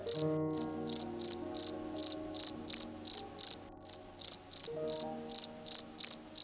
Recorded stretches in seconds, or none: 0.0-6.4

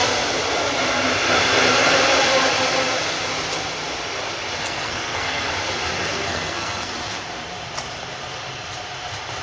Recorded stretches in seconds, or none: 0.0-4.6; 5.5-6.1; 6.9-9.4